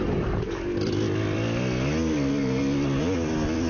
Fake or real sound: real